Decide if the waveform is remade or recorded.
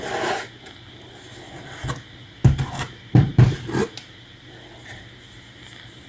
recorded